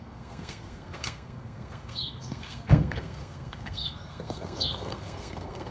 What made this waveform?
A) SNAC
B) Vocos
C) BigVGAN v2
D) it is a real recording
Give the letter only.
A